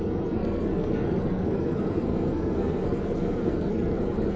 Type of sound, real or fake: fake